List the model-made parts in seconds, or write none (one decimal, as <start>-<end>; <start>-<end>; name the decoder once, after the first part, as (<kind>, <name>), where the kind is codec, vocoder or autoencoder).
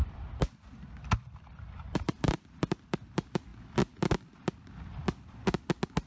0.0-3.5 (vocoder, BigVGAN v2)